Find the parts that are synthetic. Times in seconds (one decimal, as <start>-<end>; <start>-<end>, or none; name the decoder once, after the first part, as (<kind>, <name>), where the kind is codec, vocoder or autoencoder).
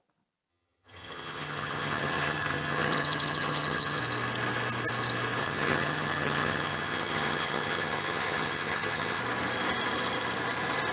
0.5-4.0 (vocoder, HiFi-GAN); 5.4-9.2